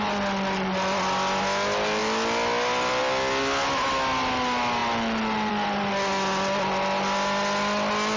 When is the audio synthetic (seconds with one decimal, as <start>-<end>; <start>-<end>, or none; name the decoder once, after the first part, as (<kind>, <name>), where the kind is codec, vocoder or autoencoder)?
none

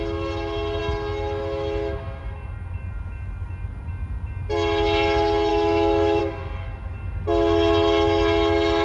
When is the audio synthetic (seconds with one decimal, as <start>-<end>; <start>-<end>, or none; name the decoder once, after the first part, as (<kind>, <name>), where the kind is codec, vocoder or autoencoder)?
5.5-6.2 (autoencoder, DAC-VAE)